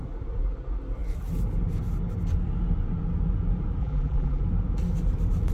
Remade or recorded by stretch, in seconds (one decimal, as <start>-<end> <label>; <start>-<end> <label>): 0.0-3.8 recorded; 3.8-4.4 remade; 4.4-5.5 recorded